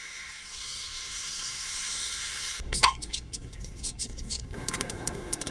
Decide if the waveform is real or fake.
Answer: fake